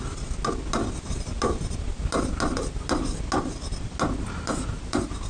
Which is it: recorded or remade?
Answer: recorded